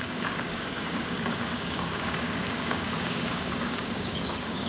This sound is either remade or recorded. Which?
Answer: remade